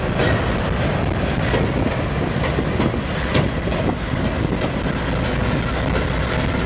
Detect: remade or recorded recorded